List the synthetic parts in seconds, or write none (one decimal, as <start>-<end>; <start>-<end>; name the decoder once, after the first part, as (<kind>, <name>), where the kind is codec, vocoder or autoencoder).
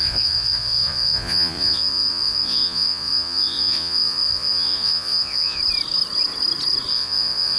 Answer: 0.0-5.6 (vocoder, Vocos); 6.9-7.6